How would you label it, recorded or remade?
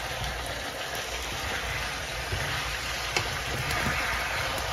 recorded